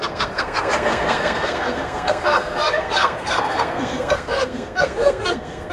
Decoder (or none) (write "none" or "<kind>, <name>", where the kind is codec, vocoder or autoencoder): codec, SNAC